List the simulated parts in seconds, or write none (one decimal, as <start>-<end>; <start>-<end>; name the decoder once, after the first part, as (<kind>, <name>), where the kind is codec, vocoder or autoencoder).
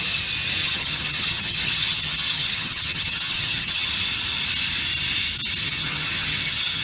0.6-3.9 (vocoder, HiFi-GAN); 5.6-6.8